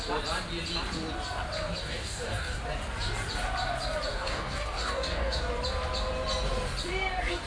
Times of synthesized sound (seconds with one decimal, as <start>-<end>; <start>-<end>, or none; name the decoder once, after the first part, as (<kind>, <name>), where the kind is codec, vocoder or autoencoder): 1.8-2.6 (codec, DAC); 4.1-5.4